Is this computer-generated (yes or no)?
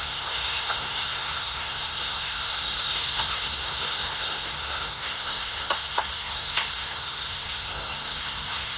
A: yes